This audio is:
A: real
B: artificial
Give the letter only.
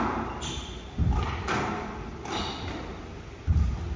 A